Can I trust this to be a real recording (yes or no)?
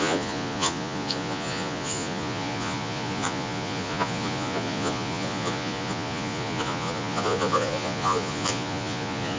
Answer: no